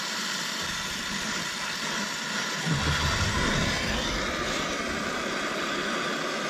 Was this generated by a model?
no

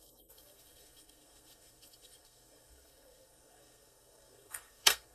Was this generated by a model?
yes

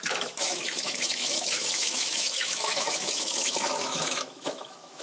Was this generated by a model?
yes